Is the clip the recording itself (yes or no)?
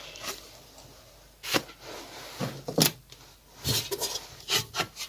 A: yes